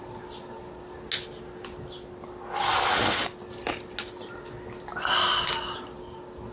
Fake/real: real